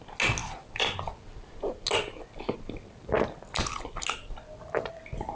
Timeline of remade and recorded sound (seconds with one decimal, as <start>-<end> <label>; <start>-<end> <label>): 0.0-5.3 recorded